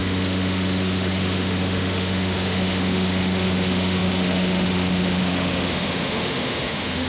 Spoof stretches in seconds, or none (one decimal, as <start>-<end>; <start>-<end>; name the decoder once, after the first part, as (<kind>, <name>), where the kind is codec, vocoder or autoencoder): 0.0-7.1 (autoencoder, DAC-VAE)